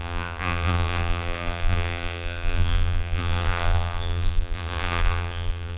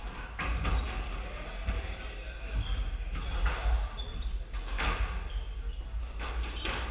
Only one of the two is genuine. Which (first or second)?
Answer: second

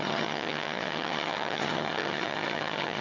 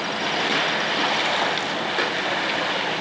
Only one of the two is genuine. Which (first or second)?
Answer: second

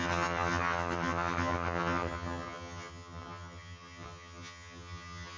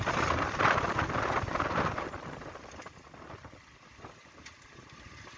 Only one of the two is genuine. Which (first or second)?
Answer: second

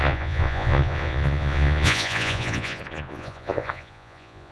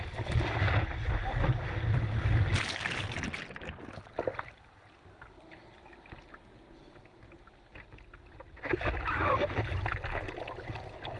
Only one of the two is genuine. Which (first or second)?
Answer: second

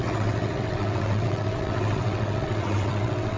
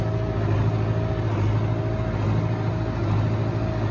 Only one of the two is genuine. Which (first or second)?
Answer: second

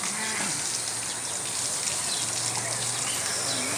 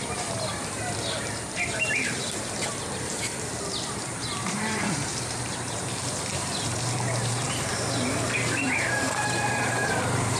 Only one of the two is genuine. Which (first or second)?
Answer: first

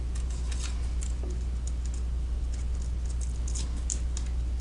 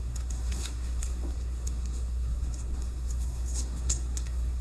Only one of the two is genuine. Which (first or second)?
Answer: first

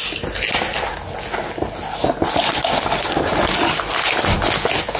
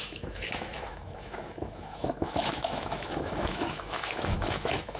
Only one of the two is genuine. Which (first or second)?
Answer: first